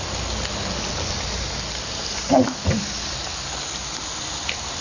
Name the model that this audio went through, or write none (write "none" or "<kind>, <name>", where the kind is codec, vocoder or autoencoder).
none